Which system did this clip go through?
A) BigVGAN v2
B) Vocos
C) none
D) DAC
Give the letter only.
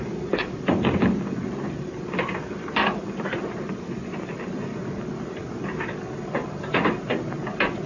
A